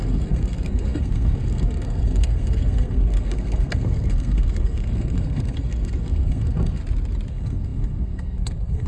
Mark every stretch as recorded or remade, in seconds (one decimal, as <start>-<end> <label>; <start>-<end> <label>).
0.0-6.8 remade; 6.8-7.3 recorded; 7.3-8.9 remade